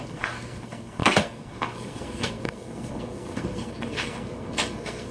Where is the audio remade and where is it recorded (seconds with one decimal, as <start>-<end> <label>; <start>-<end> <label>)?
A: 0.0-5.1 remade

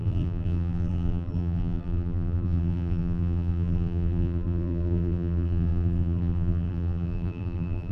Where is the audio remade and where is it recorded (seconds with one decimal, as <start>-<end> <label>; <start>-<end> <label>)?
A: 0.0-7.9 remade